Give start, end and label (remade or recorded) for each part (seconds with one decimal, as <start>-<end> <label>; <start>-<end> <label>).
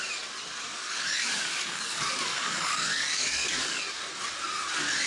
0.0-0.7 recorded; 0.7-3.8 remade; 3.8-5.1 recorded